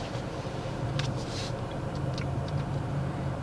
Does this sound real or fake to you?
fake